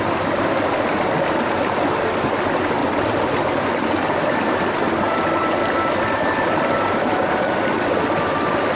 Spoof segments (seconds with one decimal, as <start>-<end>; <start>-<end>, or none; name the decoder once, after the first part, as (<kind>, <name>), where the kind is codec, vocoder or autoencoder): 2.8-7.7 (vocoder, BigVGAN v2)